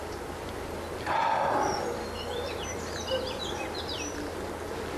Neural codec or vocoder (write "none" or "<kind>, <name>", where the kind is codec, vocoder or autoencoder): none